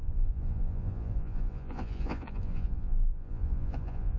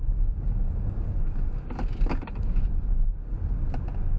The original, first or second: second